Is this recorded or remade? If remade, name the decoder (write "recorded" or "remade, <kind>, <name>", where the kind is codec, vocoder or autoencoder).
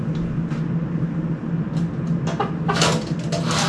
recorded